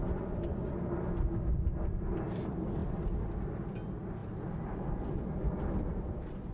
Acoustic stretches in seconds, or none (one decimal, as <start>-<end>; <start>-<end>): 0.0-6.5